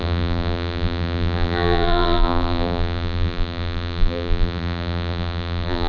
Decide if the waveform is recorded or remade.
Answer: remade